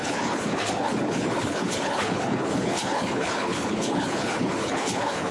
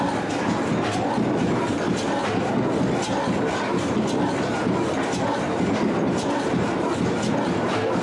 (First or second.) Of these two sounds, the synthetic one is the first